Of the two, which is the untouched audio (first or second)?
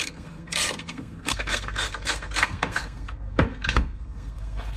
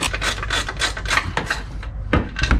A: second